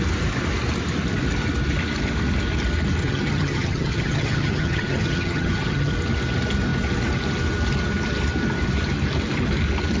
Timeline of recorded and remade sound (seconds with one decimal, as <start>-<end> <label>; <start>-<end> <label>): 0.0-3.0 recorded; 3.0-5.9 remade; 5.9-10.0 recorded